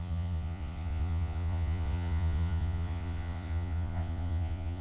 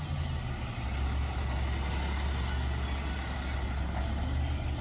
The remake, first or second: first